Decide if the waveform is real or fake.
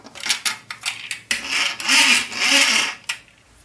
real